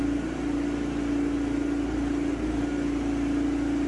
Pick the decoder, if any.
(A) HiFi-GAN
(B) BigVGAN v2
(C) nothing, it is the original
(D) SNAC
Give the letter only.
C